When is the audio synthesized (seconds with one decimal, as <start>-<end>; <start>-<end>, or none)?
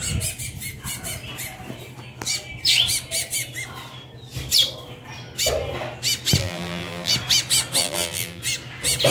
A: 6.4-7.1; 7.8-8.4